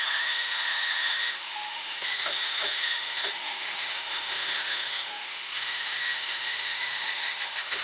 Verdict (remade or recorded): remade